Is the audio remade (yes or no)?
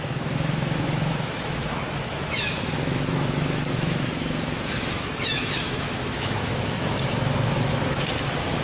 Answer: yes